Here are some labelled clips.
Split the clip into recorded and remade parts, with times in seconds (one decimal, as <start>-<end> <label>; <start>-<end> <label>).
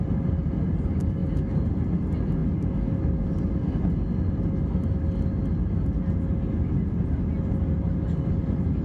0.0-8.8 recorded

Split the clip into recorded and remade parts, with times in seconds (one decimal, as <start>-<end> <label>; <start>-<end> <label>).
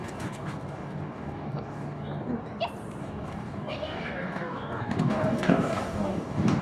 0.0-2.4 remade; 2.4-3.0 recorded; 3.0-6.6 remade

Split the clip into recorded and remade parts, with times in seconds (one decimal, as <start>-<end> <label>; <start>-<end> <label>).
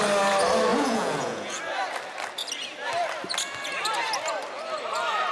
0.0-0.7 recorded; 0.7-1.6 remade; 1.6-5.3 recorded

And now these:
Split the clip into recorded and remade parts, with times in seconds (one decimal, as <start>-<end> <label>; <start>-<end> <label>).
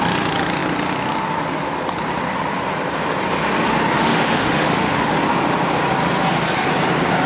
0.0-4.1 recorded; 4.1-5.2 remade; 5.2-7.3 recorded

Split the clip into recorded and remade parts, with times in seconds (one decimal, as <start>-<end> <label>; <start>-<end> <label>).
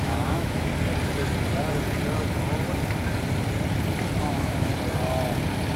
0.0-0.7 remade; 0.7-4.2 recorded; 4.2-4.7 remade; 4.7-5.8 recorded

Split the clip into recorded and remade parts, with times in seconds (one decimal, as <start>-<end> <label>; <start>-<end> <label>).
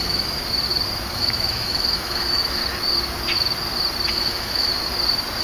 0.0-0.4 remade; 0.4-1.1 recorded; 1.1-2.6 remade; 2.6-4.1 recorded; 4.1-4.7 remade; 4.7-5.4 recorded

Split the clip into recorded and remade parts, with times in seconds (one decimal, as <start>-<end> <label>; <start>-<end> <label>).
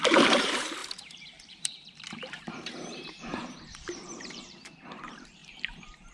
0.0-6.1 remade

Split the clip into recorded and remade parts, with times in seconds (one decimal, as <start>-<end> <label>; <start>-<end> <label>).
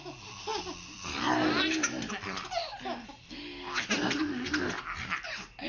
0.0-5.7 recorded